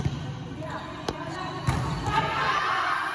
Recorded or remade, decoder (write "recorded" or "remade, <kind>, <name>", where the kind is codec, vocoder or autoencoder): recorded